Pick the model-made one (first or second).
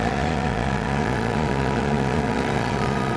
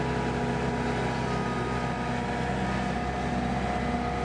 first